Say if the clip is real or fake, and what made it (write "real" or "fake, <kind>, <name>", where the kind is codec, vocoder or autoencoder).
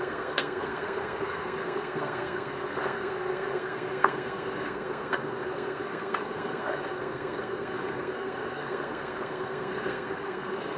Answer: fake, codec, SNAC